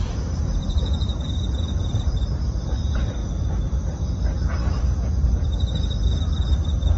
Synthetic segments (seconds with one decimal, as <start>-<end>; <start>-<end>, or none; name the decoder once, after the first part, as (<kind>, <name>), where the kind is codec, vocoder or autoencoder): 0.0-3.2 (vocoder, BigVGAN v2); 5.1-7.0